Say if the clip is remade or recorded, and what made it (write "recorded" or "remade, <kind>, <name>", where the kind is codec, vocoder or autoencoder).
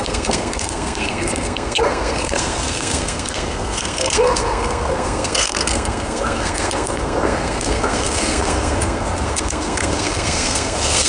remade, codec, SNAC